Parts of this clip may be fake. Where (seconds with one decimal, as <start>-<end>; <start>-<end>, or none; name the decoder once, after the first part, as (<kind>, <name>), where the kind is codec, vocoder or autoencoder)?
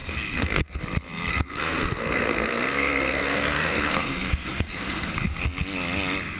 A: 0.0-0.8 (codec, SNAC); 1.3-5.1